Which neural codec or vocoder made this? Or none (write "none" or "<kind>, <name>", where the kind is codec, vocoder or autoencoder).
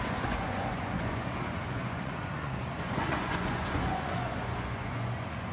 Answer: vocoder, Vocos